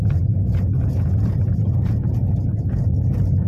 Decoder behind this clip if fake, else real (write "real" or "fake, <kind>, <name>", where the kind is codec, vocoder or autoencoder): fake, vocoder, Vocos